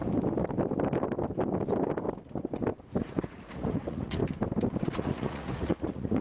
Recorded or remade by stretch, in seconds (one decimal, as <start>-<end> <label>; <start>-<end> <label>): 0.0-3.0 recorded; 3.0-4.2 remade; 4.2-4.8 recorded; 4.8-6.2 remade